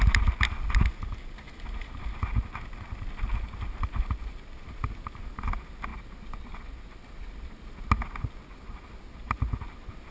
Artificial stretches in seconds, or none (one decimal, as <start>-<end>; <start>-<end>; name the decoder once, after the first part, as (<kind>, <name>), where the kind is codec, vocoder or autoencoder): none